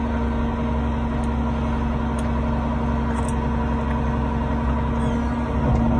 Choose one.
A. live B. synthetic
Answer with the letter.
A